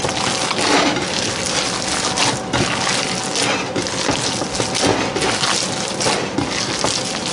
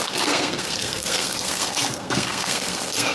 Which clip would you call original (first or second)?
first